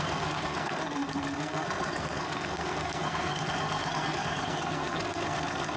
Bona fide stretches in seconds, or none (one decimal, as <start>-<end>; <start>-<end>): none